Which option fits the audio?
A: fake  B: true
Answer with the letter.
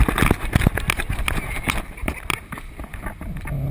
B